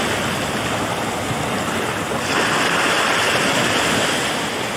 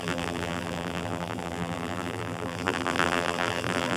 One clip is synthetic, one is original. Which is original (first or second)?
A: first